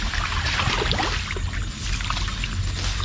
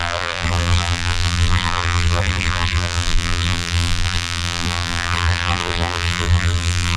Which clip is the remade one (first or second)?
second